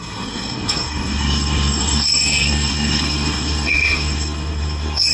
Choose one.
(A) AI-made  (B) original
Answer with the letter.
A